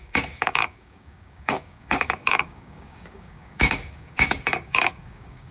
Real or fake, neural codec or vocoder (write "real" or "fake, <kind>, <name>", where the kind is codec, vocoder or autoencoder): fake, codec, DAC